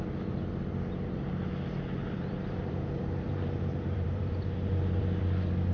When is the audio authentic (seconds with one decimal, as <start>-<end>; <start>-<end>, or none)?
0.0-2.0